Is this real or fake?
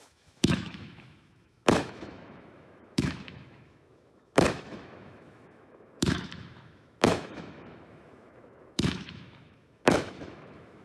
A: fake